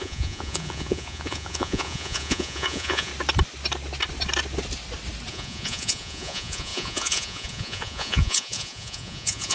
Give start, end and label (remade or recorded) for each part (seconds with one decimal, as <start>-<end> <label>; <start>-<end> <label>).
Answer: 0.0-3.1 remade; 3.1-5.3 recorded; 5.3-9.5 remade